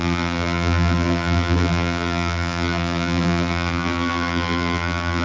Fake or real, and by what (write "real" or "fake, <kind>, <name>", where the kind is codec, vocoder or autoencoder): fake, vocoder, BigVGAN v2